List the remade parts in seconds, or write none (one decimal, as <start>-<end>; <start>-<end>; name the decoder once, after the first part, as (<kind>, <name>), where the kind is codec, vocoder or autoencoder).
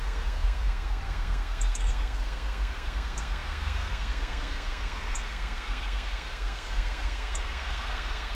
0.0-8.3 (codec, SNAC)